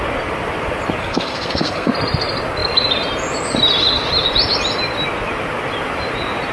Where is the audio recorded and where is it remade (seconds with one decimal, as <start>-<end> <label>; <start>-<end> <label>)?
0.0-1.0 recorded; 1.0-1.9 remade; 1.9-6.5 recorded